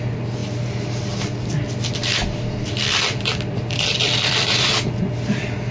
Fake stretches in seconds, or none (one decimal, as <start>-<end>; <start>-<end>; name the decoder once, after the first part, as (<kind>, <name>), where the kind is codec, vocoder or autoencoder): 2.2-4.7 (vocoder, BigVGAN v2)